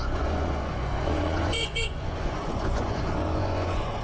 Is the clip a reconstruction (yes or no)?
yes